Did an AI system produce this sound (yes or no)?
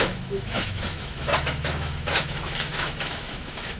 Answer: yes